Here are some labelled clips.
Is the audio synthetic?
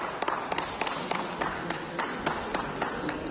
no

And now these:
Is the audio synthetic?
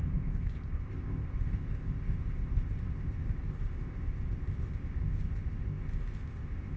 yes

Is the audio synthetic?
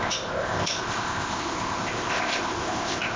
yes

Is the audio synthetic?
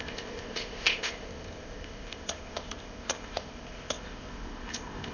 yes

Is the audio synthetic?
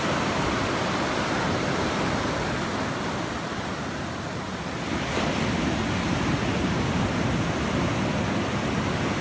no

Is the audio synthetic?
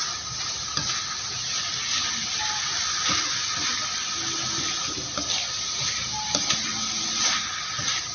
no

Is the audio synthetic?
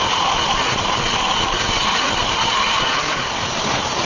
no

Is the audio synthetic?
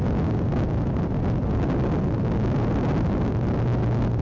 no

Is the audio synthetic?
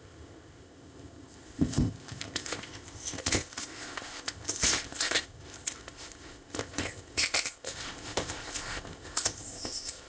yes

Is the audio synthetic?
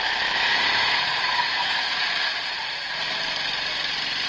no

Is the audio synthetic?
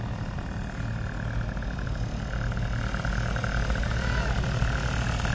no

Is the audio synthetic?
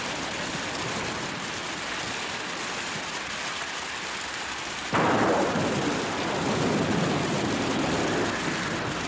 no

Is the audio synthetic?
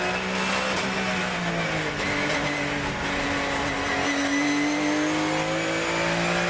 no